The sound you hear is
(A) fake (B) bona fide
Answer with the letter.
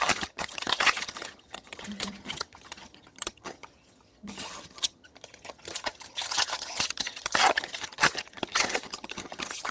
A